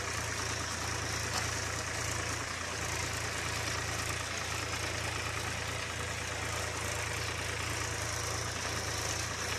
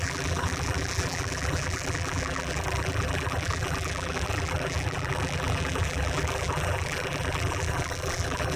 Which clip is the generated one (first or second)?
second